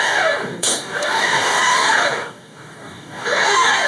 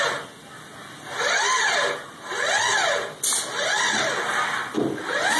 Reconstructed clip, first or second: first